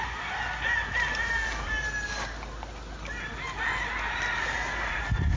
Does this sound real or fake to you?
real